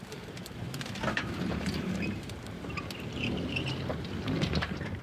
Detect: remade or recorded remade